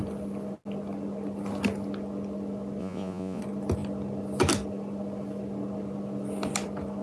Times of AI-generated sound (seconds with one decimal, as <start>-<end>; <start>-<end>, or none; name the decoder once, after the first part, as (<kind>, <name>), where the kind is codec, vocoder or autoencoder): 2.8-3.4 (vocoder, Vocos)